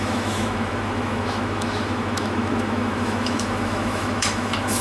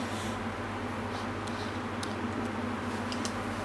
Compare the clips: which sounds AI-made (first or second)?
first